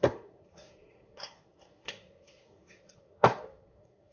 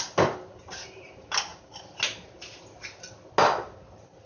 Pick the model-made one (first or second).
first